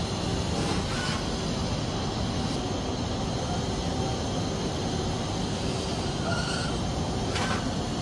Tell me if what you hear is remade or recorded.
recorded